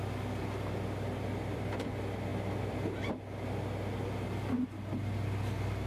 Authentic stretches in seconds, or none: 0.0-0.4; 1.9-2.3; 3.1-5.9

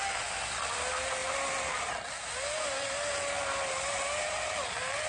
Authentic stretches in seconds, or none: 0.0-5.1